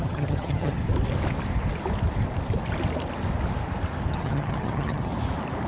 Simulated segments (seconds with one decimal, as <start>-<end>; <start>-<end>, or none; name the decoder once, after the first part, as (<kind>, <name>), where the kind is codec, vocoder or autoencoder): 0.0-0.8 (vocoder, HiFi-GAN); 4.1-5.1